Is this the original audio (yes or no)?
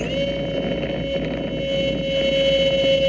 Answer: yes